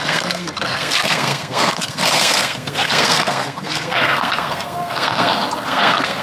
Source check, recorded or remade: remade